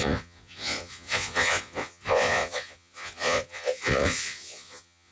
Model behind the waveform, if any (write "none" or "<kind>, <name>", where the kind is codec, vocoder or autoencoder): vocoder, Vocos